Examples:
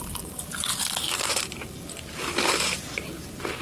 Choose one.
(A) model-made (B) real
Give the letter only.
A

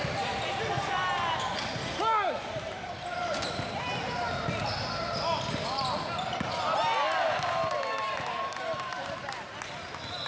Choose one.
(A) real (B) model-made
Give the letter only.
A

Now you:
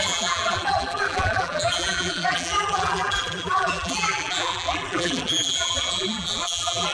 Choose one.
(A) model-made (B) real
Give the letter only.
A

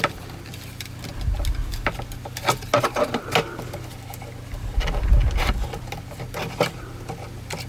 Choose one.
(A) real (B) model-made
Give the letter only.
A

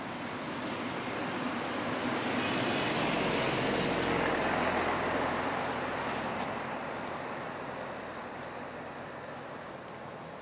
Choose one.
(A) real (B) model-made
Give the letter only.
A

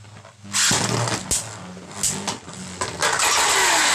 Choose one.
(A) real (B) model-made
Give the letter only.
A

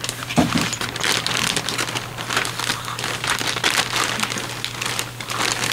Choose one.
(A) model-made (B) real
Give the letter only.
B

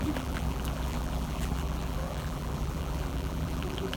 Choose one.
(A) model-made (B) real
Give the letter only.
A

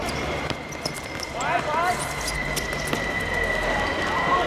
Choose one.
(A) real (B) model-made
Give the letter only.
A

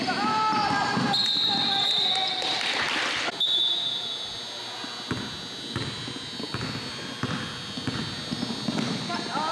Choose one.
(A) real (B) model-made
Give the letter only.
A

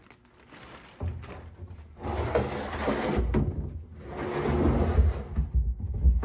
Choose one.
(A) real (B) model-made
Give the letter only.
A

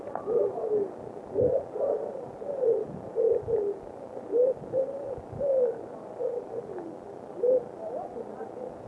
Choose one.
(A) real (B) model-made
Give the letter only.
A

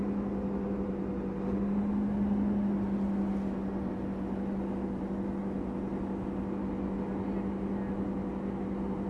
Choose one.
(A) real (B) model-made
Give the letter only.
A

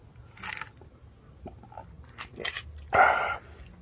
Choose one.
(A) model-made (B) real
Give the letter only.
B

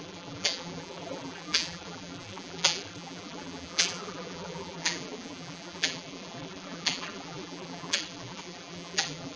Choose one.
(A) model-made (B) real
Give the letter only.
A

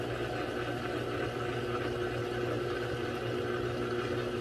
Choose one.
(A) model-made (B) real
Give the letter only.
B